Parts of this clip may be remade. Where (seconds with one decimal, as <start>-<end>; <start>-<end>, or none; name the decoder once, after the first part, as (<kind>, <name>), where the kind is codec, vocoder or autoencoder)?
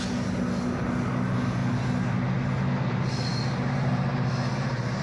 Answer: none